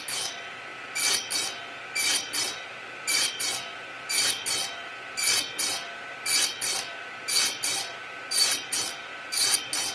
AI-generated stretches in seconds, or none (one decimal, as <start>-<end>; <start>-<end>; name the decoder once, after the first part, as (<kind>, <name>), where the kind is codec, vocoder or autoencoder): none